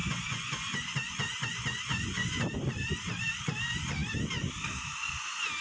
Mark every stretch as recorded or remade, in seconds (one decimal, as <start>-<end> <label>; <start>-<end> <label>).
0.0-2.4 remade; 2.4-5.6 recorded